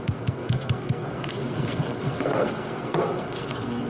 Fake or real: fake